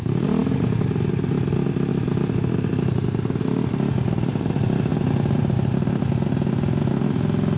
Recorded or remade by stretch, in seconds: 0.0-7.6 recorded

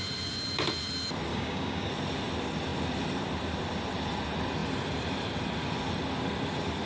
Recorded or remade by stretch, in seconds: 0.0-1.3 recorded; 1.3-1.9 remade; 1.9-6.9 recorded

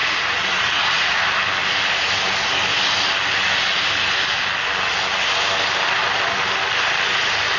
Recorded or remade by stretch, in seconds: 0.0-1.2 remade; 1.2-7.6 recorded

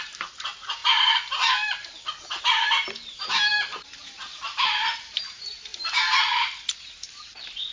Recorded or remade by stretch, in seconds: 0.0-0.8 remade; 0.8-2.4 recorded; 2.4-3.5 remade; 3.5-4.1 recorded; 4.1-7.7 remade